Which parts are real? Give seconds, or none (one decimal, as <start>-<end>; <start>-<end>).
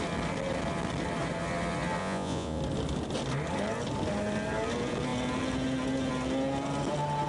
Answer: 0.0-2.0; 2.6-7.3